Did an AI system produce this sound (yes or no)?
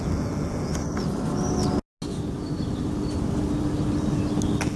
no